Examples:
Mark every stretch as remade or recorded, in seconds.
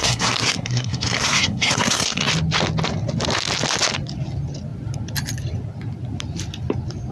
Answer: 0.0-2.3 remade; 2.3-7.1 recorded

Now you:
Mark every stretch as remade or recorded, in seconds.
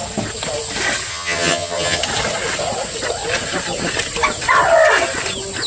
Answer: 0.0-1.1 recorded; 1.1-2.0 remade; 2.0-5.7 recorded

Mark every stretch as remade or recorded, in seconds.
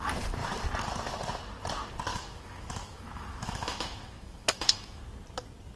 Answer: 0.0-2.1 recorded; 2.1-5.0 remade; 5.0-5.8 recorded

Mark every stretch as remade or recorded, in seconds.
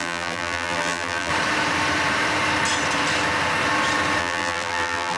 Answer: 0.0-1.3 remade; 1.3-4.2 recorded; 4.2-5.2 remade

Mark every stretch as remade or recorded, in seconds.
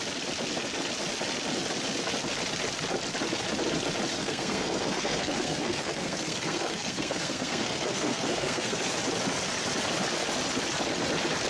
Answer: 0.0-4.1 recorded; 4.1-9.0 remade; 9.0-11.5 recorded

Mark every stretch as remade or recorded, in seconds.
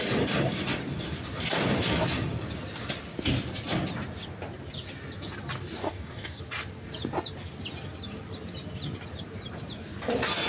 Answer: 0.0-5.8 recorded; 5.8-6.4 remade; 6.4-10.5 recorded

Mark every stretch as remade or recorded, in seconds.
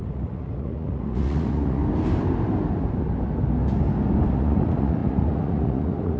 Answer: 0.0-1.8 remade; 1.8-4.3 recorded; 4.3-6.2 remade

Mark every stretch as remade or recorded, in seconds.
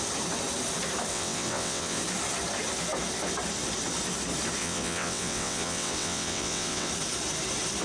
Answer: 0.0-1.1 recorded; 1.1-2.0 remade; 2.0-4.6 recorded; 4.6-6.9 remade; 6.9-7.8 recorded